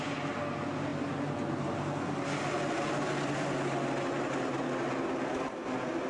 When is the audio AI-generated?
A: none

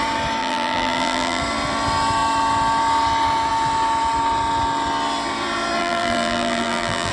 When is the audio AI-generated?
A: 0.4-1.4 (vocoder, BigVGAN v2); 5.8-7.1

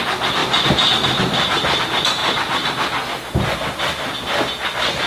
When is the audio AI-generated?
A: none

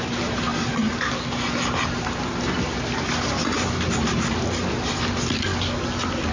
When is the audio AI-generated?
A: none

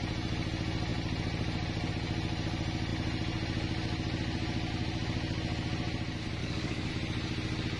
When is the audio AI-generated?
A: 6.4-6.9 (codec, DAC)

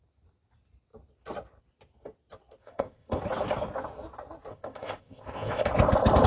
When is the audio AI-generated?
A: 2.6-3.2 (codec, ZipCodec); 4.5-5.7

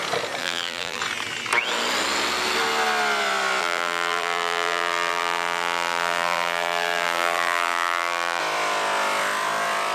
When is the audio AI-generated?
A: 0.4-1.0 (vocoder, BigVGAN v2); 3.6-8.4

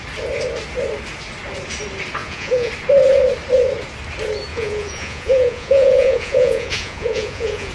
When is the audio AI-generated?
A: 2.2-2.7 (vocoder, Vocos); 4.5-7.7